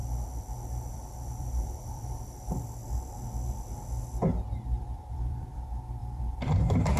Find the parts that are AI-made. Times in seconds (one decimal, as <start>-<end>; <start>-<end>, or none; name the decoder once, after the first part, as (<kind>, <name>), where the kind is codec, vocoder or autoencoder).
0.9-2.8 (vocoder, BigVGAN v2); 4.8-7.0